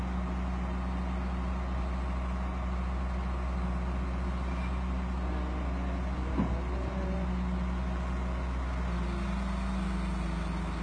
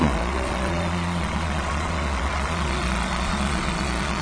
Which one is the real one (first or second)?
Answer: first